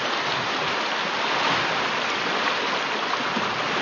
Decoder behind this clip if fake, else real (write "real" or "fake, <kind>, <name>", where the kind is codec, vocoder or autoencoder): real